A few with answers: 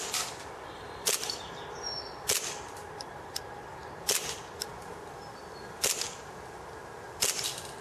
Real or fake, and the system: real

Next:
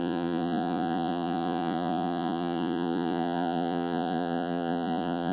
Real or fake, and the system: fake, vocoder, Vocos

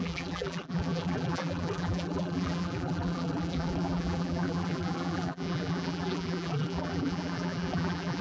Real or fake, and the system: fake, vocoder, BigVGAN v2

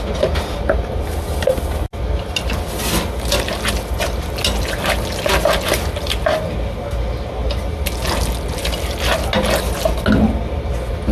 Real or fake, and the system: real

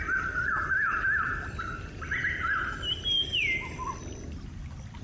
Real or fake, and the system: real